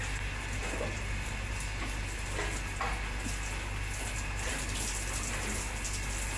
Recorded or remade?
recorded